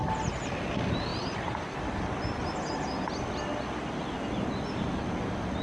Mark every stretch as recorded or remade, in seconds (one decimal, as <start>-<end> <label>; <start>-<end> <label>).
0.0-5.6 recorded